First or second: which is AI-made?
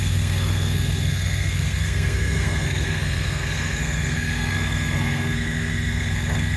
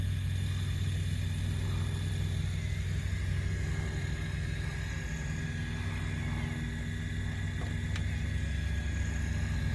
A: first